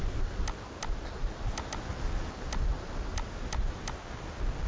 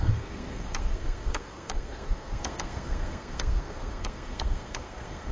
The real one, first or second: first